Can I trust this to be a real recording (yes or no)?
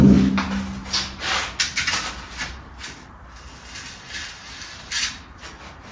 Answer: yes